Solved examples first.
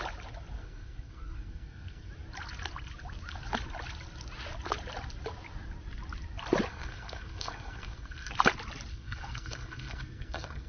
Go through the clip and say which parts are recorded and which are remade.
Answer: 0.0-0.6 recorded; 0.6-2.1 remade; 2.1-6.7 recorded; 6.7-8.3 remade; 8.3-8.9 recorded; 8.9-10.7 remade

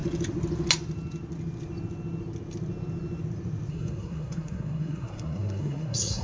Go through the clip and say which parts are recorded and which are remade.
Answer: 0.0-3.7 recorded; 3.7-6.2 remade

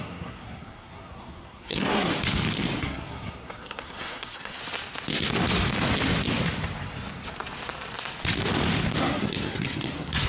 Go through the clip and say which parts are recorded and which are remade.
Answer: 0.0-2.1 remade; 2.1-2.8 recorded; 2.8-4.6 remade; 4.6-9.0 recorded; 9.0-10.3 remade

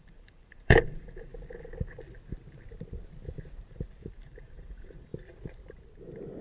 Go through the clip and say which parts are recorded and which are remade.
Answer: 0.0-1.3 remade; 1.3-4.1 recorded; 4.1-5.1 remade; 5.1-6.4 recorded